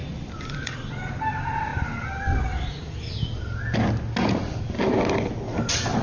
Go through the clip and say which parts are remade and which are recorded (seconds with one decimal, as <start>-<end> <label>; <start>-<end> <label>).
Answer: 0.0-1.1 remade; 1.1-1.7 recorded; 1.7-3.2 remade; 3.2-6.0 recorded